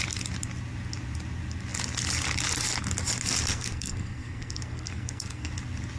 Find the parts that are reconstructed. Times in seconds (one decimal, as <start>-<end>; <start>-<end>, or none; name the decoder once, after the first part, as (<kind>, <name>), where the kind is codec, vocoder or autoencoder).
3.5-5.5 (codec, SNAC)